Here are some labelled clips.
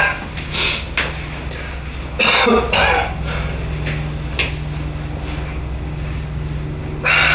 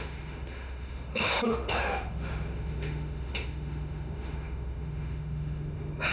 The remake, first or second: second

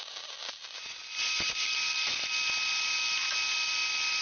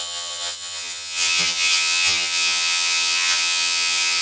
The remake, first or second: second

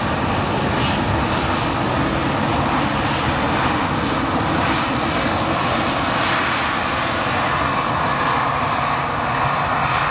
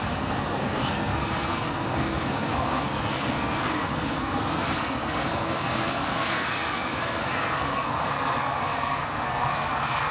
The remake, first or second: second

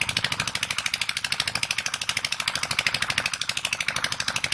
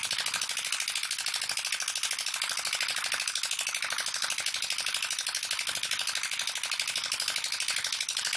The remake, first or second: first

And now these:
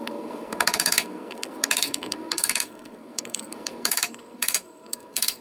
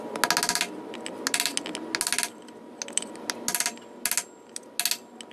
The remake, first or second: first